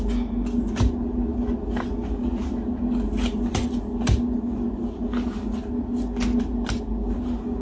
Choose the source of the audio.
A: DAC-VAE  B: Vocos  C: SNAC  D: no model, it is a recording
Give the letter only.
D